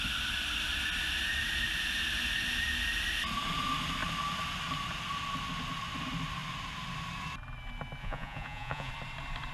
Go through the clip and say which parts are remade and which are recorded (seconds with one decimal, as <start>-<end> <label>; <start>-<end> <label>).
0.0-8.0 recorded; 8.0-8.9 remade; 8.9-9.5 recorded